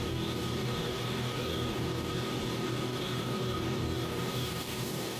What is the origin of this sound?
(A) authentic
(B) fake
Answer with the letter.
B